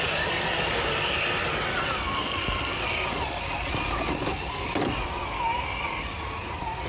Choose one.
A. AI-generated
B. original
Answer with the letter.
B